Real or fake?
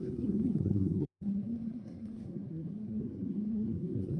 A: fake